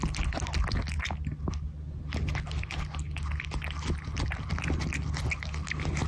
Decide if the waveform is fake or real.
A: real